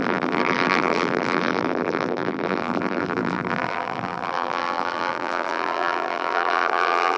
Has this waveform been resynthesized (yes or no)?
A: yes